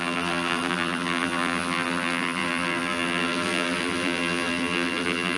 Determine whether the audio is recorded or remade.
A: remade